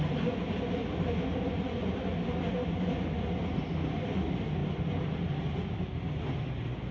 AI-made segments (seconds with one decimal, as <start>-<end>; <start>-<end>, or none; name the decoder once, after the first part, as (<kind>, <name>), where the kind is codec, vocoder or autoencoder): none